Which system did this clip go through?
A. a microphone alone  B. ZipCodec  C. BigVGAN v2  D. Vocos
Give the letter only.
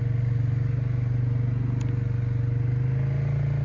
A